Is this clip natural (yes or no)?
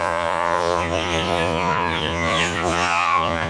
no